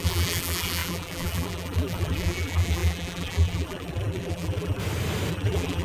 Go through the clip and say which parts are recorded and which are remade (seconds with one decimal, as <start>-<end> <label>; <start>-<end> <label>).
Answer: 0.0-4.8 remade; 4.8-5.3 recorded; 5.3-5.8 remade